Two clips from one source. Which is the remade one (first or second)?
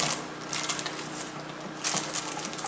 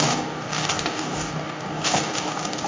second